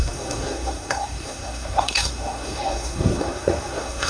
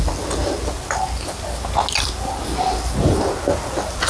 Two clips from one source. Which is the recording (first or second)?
second